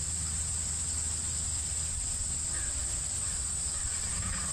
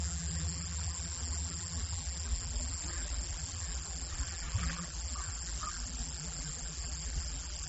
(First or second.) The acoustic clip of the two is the first